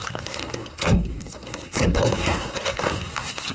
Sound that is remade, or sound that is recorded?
remade